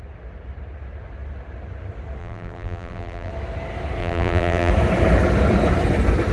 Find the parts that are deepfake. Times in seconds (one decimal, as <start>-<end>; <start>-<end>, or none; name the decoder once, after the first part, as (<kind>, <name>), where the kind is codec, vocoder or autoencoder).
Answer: 2.2-3.3 (vocoder, BigVGAN v2); 4.0-4.7